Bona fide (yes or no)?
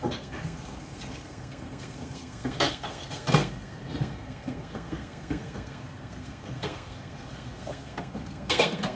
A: no